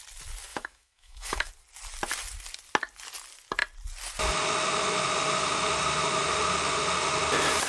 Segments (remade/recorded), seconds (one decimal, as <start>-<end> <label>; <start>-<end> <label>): 0.0-0.5 recorded; 0.5-1.5 remade; 1.5-7.7 recorded